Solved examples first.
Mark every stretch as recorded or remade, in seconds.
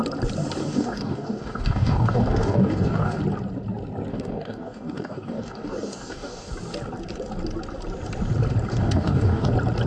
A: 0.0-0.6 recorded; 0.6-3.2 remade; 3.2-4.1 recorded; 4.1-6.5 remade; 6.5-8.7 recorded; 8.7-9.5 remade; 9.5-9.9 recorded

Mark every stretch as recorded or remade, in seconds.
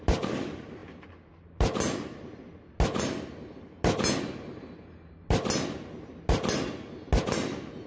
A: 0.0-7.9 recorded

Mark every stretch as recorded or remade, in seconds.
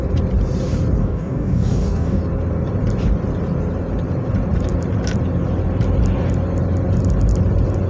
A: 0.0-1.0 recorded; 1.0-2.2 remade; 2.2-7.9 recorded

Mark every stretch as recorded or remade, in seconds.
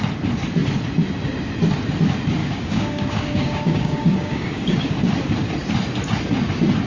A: 0.0-2.4 recorded; 2.4-4.9 remade; 4.9-6.9 recorded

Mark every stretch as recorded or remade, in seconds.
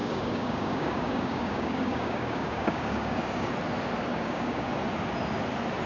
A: 0.0-3.5 remade; 3.5-4.1 recorded; 4.1-4.7 remade; 4.7-5.9 recorded